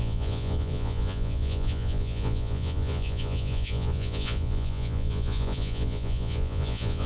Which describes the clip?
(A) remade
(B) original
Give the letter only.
A